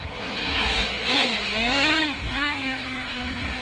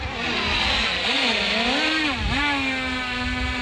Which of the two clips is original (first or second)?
second